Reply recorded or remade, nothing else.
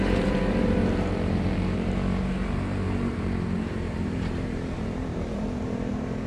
remade